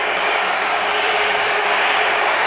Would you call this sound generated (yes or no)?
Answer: yes